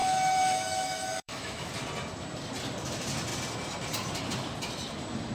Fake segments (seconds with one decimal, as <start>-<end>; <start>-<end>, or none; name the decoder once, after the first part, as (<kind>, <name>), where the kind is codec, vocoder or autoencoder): 0.0-1.7 (autoencoder, DAC-VAE)